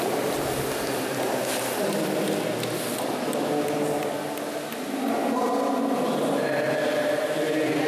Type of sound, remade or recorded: recorded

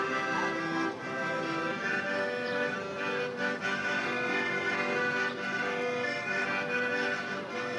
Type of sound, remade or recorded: recorded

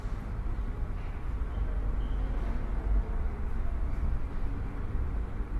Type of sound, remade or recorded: recorded